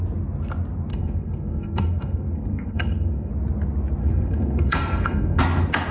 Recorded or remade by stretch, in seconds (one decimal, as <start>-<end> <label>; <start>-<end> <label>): 0.0-0.9 recorded; 0.9-3.3 remade; 3.3-4.0 recorded; 4.0-5.4 remade; 5.4-5.9 recorded